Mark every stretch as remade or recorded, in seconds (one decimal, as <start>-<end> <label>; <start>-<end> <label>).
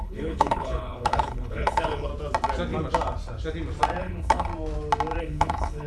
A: 0.0-2.1 remade; 2.1-4.0 recorded; 4.0-4.5 remade; 4.5-5.2 recorded; 5.2-5.9 remade